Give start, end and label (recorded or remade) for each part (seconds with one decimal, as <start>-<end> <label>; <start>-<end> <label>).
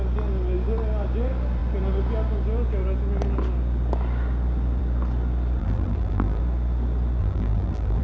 0.0-5.6 recorded; 5.6-6.4 remade; 6.4-7.2 recorded; 7.2-8.0 remade